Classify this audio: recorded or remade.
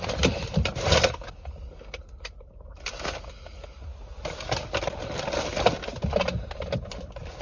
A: recorded